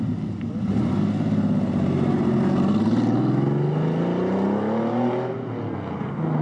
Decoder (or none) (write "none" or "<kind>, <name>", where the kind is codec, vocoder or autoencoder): none